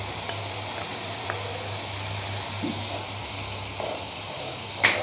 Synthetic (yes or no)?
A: no